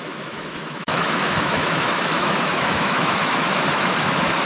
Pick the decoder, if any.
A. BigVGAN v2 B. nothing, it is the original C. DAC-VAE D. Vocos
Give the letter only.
C